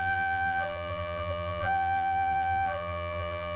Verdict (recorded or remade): remade